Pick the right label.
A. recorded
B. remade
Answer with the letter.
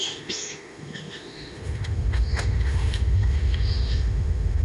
B